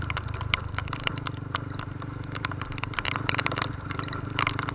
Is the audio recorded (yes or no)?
no